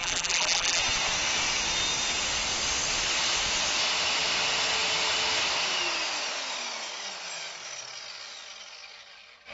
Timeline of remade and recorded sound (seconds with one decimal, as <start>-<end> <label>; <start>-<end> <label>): 0.0-0.8 remade; 0.8-9.5 recorded